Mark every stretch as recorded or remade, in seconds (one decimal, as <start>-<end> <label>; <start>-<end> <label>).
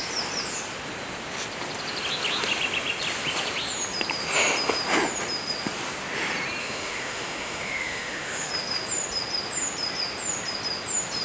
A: 0.0-6.6 recorded; 6.6-8.5 remade; 8.5-11.2 recorded